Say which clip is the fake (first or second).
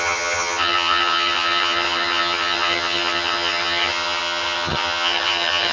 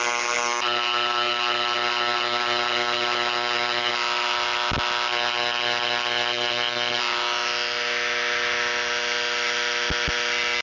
first